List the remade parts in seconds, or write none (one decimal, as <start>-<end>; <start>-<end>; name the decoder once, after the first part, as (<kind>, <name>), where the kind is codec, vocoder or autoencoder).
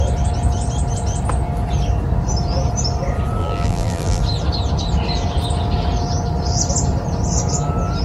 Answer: 3.4-4.2 (vocoder, BigVGAN v2)